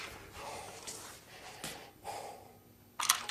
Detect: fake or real real